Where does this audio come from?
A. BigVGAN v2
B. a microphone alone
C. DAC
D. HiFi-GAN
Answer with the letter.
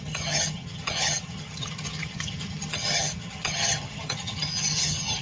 D